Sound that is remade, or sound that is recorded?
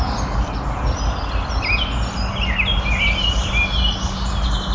recorded